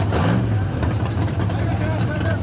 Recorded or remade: remade